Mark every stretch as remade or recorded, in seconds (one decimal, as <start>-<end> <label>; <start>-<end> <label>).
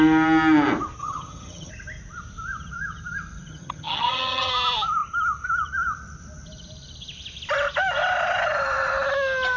0.0-1.0 recorded; 1.0-1.7 remade; 1.7-3.5 recorded; 3.5-4.5 remade; 4.5-9.6 recorded